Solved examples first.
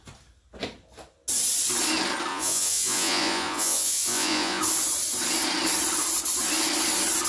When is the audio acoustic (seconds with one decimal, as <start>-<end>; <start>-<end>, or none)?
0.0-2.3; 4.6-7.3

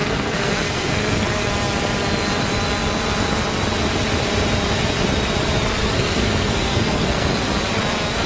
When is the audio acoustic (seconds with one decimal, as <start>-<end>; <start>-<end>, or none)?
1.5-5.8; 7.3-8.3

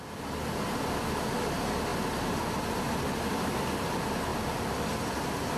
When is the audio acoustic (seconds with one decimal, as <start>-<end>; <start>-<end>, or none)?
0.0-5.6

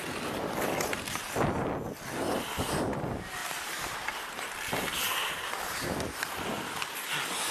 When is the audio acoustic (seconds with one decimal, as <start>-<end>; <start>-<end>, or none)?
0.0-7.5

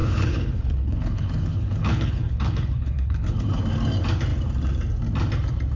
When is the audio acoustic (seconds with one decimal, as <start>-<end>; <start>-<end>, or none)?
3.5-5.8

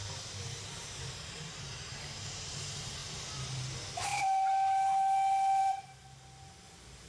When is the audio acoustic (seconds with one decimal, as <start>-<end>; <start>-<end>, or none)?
2.6-7.1

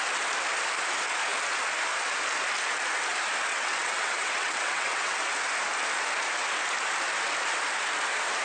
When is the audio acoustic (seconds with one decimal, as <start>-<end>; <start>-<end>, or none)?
0.0-3.5; 5.2-8.4